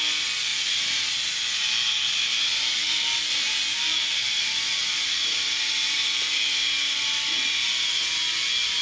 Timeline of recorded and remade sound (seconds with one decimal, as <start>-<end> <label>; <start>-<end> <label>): 0.0-0.5 recorded; 0.5-1.1 remade; 1.1-2.5 recorded; 2.5-7.6 remade; 7.6-8.8 recorded